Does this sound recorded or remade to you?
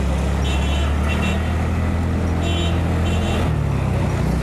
recorded